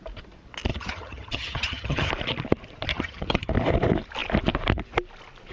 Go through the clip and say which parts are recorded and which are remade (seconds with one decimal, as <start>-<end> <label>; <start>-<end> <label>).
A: 0.0-0.7 recorded; 0.7-2.1 remade; 2.1-2.9 recorded; 2.9-3.5 remade; 3.5-5.5 recorded